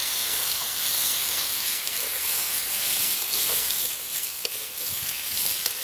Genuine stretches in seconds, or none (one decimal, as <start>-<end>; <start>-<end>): none